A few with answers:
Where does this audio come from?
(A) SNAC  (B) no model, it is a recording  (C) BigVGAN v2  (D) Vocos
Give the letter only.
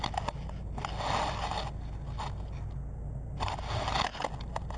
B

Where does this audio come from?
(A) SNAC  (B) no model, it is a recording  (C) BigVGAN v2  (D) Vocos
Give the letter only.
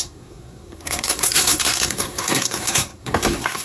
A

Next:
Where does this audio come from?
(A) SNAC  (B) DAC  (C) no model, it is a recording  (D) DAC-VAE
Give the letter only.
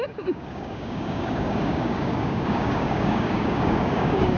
B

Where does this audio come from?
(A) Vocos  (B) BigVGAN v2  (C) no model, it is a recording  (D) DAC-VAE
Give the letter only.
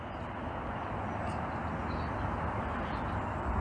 C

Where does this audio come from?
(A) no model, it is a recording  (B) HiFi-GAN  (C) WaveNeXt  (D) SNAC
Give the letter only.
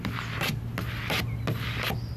A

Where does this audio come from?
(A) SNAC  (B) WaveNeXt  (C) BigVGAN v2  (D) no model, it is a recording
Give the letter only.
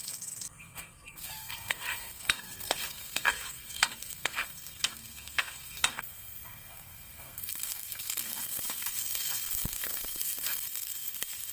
A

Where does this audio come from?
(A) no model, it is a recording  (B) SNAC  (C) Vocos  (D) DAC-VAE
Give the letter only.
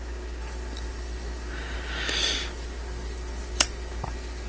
A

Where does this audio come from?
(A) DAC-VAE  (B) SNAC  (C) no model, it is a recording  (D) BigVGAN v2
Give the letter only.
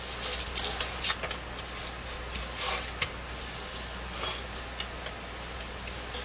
C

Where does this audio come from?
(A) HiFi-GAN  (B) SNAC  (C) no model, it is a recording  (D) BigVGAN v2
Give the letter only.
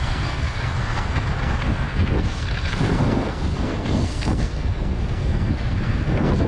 B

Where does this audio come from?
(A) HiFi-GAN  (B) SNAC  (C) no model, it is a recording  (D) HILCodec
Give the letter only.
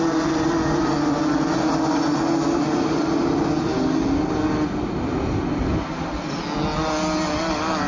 C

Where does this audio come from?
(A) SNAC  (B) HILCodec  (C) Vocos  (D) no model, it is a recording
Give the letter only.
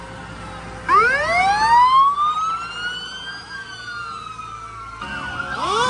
D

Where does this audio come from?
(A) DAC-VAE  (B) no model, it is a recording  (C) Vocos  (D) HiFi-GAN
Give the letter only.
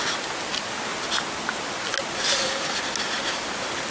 B